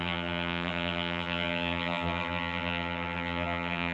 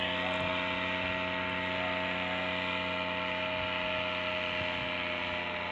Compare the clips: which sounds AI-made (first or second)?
first